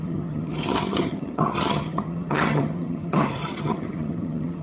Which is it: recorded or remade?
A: remade